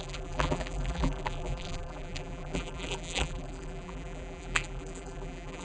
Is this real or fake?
fake